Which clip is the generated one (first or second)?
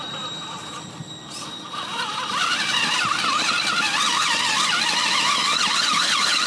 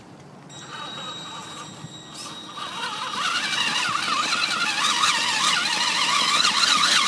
first